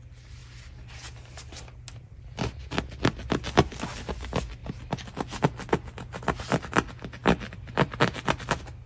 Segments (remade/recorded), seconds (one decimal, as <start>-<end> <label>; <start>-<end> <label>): 0.0-8.9 recorded